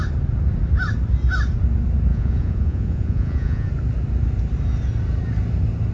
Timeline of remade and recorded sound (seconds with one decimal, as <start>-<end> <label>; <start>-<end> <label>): 0.0-2.1 recorded; 2.1-3.7 remade; 3.7-5.9 recorded

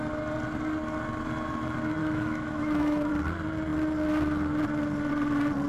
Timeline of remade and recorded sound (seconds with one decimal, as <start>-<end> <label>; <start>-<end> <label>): 0.0-2.0 recorded; 2.0-3.1 remade; 3.1-5.7 recorded

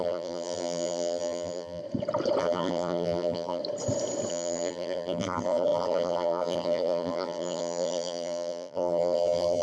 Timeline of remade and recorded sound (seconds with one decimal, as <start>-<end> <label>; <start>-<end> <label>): 0.0-1.8 remade; 1.8-2.4 recorded; 2.4-3.6 remade; 3.6-4.3 recorded; 4.3-9.6 remade

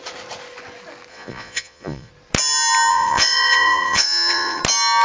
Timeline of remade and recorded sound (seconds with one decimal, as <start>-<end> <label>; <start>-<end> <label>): 0.0-1.1 recorded; 1.1-2.1 remade; 2.1-2.9 recorded; 2.9-4.6 remade; 4.6-5.0 recorded

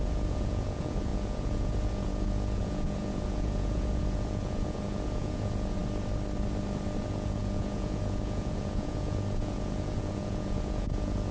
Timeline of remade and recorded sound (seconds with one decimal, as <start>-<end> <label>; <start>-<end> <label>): 0.0-5.8 remade; 5.8-7.0 recorded; 7.0-11.3 remade